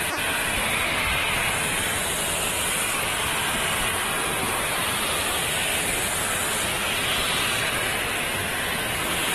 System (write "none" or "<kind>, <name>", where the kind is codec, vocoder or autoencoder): none